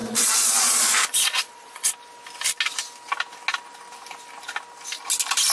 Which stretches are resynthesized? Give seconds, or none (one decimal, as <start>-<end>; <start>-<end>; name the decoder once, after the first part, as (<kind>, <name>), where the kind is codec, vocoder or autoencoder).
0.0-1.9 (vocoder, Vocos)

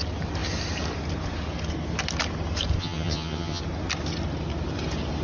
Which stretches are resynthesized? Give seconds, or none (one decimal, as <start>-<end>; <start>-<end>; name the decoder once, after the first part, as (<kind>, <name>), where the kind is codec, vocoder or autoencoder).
2.8-3.6 (vocoder, HiFi-GAN)

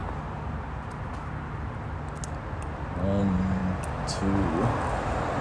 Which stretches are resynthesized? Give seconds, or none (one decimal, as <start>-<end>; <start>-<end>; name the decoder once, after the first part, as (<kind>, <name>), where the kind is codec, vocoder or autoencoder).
3.2-3.6 (vocoder, BigVGAN v2); 4.9-5.4

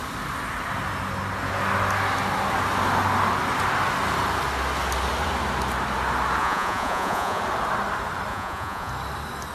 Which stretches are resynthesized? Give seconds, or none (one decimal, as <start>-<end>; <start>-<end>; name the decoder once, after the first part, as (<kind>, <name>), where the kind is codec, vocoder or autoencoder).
6.4-7.4 (vocoder, Vocos); 8.3-8.9